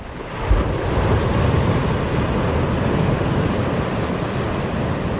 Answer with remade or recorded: recorded